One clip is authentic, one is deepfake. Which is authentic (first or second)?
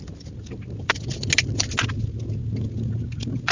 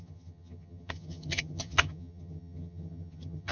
first